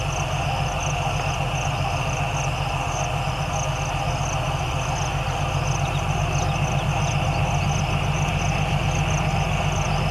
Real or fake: real